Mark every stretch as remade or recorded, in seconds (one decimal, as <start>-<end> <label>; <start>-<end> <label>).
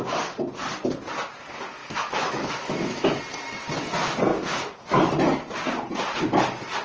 0.0-1.8 recorded; 1.8-3.2 remade; 3.2-4.3 recorded; 4.3-5.1 remade; 5.1-6.8 recorded